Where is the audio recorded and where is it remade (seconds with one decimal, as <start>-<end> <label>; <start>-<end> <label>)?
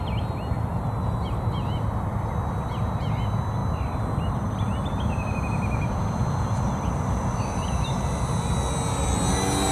0.0-9.7 recorded